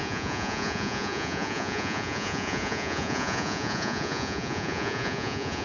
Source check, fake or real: fake